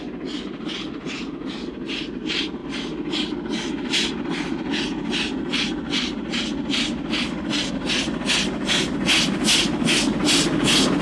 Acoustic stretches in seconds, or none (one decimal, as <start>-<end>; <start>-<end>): 0.0-11.0